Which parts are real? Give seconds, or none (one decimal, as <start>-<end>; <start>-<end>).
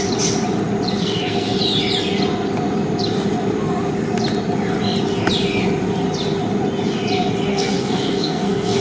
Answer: 0.0-1.0; 1.6-7.5